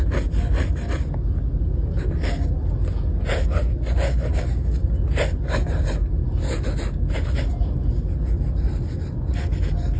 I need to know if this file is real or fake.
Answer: real